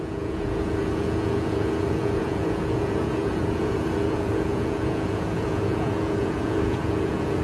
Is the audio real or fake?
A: fake